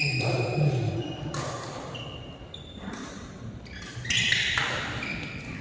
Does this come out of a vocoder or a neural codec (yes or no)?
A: no